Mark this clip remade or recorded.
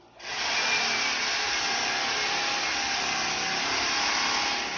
recorded